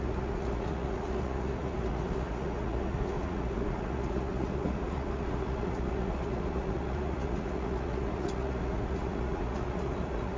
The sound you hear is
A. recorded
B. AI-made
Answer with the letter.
B